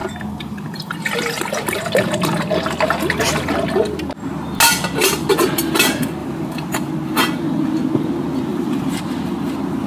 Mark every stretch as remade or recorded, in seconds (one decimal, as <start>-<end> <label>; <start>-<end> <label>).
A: 0.0-1.4 remade; 1.4-6.2 recorded; 6.2-6.9 remade; 6.9-8.5 recorded; 8.5-9.0 remade; 9.0-9.9 recorded